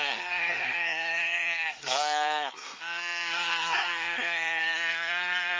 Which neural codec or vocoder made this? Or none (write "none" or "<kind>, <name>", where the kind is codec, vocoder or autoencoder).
codec, SNAC